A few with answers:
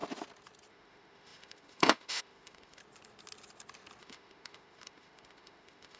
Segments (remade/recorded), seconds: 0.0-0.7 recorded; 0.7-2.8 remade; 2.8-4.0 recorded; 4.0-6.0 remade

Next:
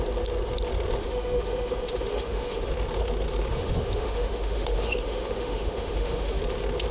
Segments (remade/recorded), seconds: 0.0-1.0 recorded; 1.0-2.7 remade; 2.7-3.5 recorded; 3.5-6.4 remade; 6.4-6.9 recorded